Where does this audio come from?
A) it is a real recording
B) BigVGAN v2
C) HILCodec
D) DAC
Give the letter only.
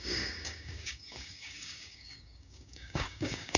D